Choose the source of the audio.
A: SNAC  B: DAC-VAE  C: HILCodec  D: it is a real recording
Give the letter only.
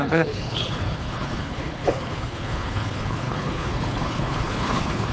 C